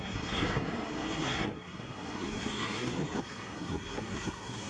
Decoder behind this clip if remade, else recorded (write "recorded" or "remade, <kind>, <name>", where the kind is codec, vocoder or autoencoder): remade, codec, SNAC